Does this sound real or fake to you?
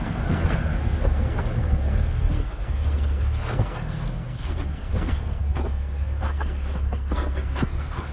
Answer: fake